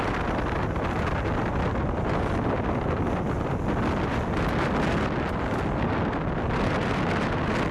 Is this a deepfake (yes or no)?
no